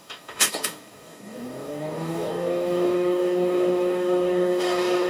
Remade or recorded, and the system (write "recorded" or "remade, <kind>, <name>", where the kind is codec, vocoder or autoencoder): remade, codec, DAC